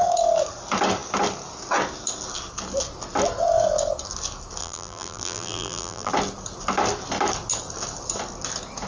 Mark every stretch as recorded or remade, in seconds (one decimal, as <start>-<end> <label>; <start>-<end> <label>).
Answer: 0.0-4.6 recorded; 4.6-6.1 remade; 6.1-8.9 recorded